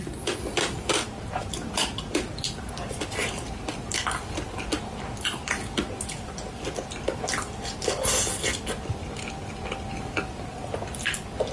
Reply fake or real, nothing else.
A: real